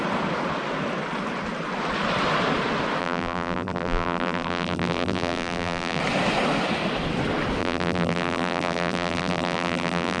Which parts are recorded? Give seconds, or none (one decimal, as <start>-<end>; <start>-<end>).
0.0-3.0; 6.0-7.6